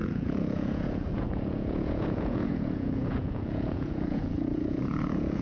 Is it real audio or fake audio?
fake